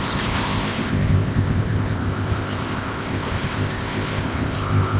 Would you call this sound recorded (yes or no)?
no